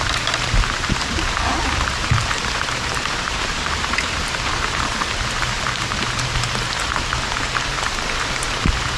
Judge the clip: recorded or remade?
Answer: remade